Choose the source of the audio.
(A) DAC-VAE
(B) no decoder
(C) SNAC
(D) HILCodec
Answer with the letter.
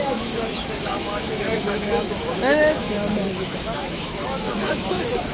A